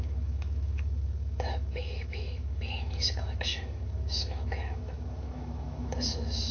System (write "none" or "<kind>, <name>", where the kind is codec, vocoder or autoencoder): autoencoder, DAC-VAE